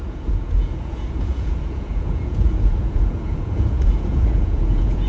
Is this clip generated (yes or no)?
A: yes